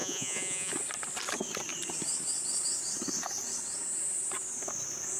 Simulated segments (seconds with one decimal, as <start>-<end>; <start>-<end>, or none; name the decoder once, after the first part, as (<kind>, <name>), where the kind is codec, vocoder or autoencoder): 0.0-0.7 (vocoder, Vocos)